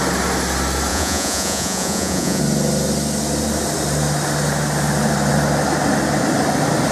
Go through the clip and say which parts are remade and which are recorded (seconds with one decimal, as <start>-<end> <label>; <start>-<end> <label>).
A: 0.0-0.9 recorded; 0.9-2.4 remade; 2.4-6.9 recorded